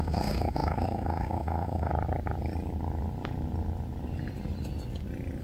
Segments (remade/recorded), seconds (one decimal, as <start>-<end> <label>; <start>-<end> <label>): 0.0-1.9 remade; 1.9-5.4 recorded